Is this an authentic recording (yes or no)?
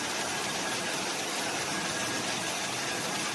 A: yes